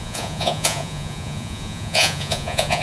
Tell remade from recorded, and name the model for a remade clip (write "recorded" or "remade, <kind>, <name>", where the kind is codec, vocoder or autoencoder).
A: remade, vocoder, Vocos